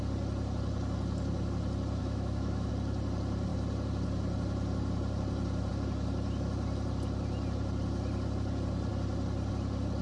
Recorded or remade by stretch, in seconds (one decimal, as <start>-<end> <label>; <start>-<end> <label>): 0.0-2.0 recorded; 2.0-2.7 remade; 2.7-10.0 recorded